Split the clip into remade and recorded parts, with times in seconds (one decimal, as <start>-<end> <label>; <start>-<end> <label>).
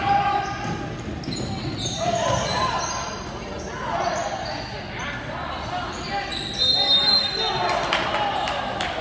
0.0-9.0 recorded